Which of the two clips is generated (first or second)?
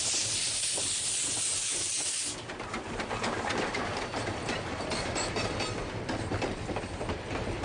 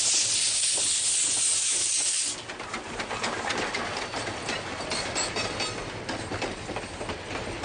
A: first